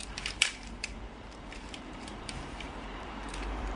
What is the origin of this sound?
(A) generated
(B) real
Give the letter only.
A